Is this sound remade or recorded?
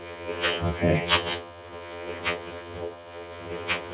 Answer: remade